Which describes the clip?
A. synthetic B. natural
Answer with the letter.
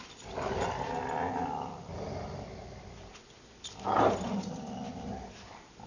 B